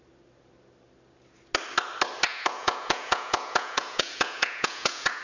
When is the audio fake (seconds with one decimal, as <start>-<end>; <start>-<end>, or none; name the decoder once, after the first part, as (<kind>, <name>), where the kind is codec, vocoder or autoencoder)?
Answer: 2.3-5.2 (vocoder, Vocos)